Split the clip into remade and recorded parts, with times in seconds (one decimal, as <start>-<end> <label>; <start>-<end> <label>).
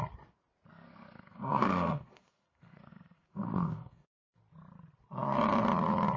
0.0-0.7 recorded; 0.7-4.4 remade; 4.4-6.2 recorded